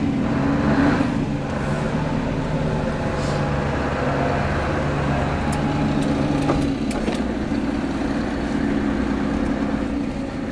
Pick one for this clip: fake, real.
real